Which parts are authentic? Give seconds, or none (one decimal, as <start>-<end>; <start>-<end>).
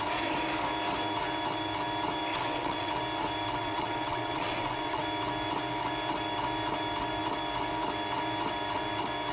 0.0-2.3; 2.9-3.6; 5.0-9.3